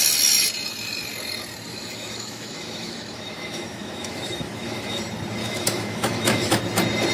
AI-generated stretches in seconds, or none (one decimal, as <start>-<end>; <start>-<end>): 1.7-5.0; 5.4-6.6